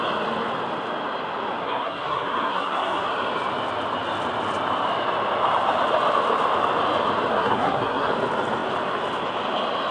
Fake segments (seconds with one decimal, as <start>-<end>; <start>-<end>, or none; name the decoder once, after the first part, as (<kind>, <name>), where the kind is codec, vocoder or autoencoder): 1.6-3.1 (codec, SNAC); 7.3-8.1